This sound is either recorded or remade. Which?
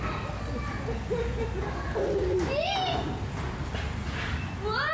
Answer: recorded